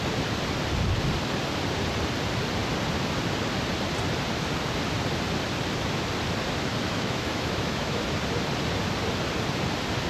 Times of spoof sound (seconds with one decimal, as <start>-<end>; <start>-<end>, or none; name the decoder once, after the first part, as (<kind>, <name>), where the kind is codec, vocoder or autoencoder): 6.7-8.0 (autoencoder, DAC-VAE)